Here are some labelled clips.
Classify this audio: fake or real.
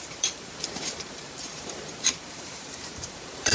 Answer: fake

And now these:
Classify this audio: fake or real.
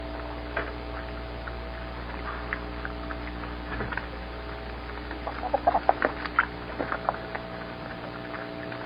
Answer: real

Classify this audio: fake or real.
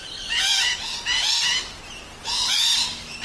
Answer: real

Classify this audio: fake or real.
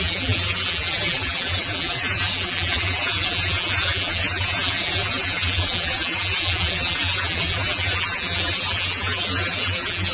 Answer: fake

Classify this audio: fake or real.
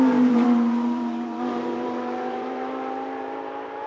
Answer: fake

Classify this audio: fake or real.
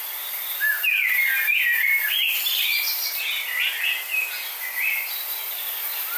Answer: real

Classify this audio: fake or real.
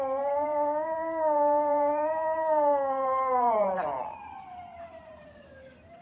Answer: fake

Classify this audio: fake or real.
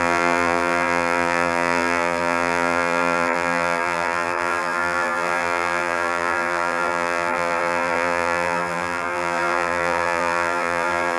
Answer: fake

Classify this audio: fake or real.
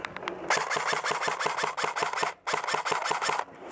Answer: real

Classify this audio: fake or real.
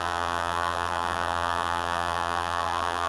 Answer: fake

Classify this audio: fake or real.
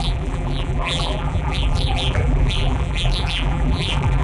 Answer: fake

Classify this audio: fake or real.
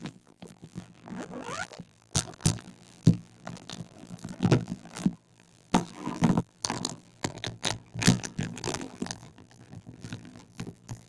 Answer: fake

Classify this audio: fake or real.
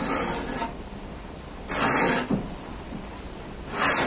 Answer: real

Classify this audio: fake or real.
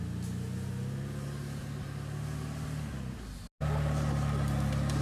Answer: real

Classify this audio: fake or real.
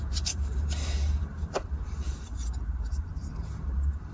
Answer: fake